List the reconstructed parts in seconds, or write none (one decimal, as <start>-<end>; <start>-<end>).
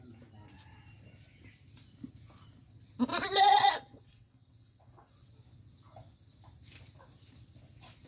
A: 3.1-5.3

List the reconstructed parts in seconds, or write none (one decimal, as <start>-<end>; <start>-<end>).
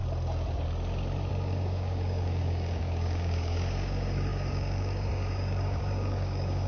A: 1.3-6.7